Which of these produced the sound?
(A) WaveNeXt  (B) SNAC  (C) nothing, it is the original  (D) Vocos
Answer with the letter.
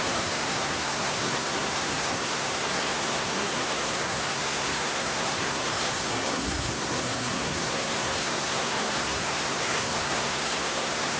B